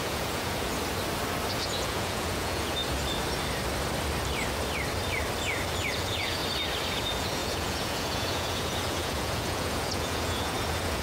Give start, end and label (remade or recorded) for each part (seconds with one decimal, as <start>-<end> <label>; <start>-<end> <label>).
0.0-0.7 remade; 0.7-1.5 recorded; 1.5-2.8 remade; 2.8-5.9 recorded; 5.9-6.4 remade; 6.4-6.9 recorded; 6.9-11.0 remade